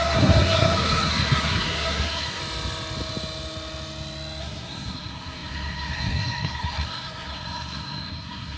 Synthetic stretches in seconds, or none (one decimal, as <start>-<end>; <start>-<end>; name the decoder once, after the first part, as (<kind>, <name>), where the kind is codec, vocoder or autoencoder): 0.0-2.4 (codec, SNAC); 4.4-8.6